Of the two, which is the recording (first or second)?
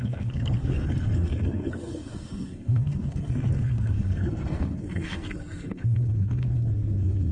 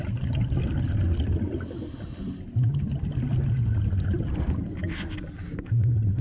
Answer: second